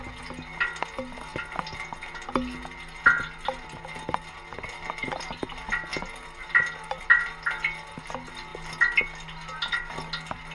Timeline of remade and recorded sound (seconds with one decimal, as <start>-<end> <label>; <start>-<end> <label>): 0.0-10.5 recorded